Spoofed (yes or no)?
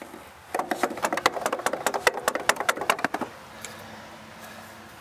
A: no